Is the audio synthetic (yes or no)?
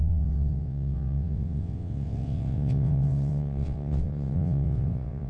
yes